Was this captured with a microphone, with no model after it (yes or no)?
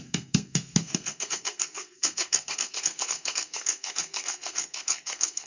no